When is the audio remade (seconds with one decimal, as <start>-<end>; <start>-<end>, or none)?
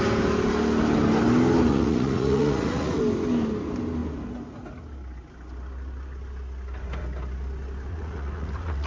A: 1.7-3.0; 7.9-8.9